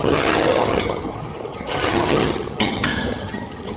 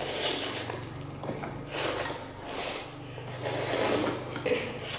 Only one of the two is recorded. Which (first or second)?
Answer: second